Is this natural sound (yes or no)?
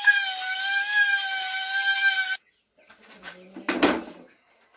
yes